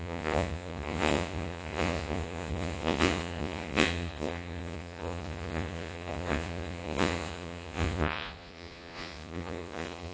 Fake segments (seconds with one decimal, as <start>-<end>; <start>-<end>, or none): 0.0-10.1